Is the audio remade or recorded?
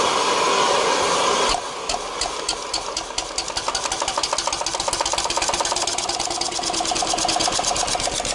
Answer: recorded